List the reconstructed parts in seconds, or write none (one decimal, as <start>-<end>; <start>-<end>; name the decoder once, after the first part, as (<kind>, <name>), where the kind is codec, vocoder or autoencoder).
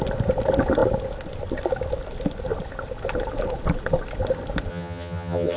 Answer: 4.7-5.6 (vocoder, HiFi-GAN)